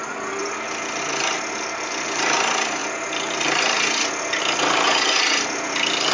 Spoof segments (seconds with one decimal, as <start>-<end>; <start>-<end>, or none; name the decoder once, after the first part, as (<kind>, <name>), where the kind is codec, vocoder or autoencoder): none